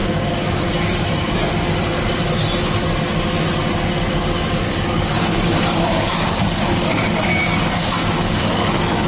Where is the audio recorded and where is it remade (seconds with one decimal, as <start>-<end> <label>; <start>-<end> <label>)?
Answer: 0.0-4.7 recorded; 4.7-9.1 remade